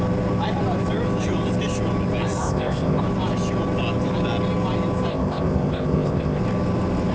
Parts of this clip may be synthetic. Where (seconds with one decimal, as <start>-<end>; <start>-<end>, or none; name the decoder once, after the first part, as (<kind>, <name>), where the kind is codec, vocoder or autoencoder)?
2.4-3.0 (codec, ZipCodec); 5.1-6.4